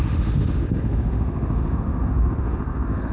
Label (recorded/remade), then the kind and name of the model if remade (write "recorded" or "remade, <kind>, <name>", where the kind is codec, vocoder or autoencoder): remade, autoencoder, DAC-VAE